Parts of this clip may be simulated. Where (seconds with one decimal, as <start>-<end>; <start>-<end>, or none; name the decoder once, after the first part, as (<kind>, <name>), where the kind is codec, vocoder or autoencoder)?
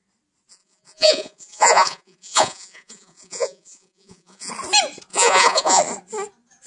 0.5-4.5 (vocoder, Vocos); 5.1-5.8